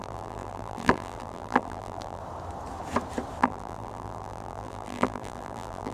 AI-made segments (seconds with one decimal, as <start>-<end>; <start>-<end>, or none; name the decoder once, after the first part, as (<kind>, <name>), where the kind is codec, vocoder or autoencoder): 0.0-2.2 (vocoder, BigVGAN v2); 3.4-5.9